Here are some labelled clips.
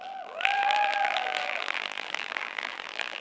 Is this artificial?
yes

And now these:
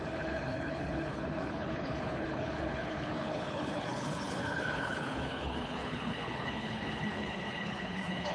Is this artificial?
yes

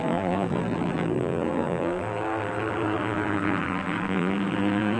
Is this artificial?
yes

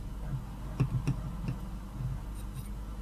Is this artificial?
no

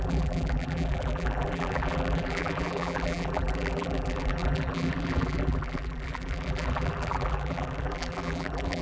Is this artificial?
yes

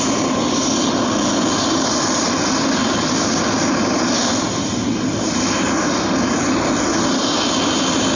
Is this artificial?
no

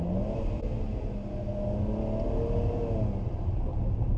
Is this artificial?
no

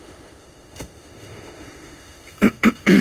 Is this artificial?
yes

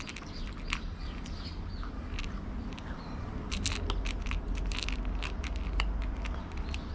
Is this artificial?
no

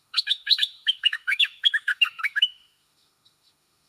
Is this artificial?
yes